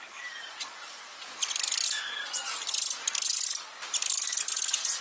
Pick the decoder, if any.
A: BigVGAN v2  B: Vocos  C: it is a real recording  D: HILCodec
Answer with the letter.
C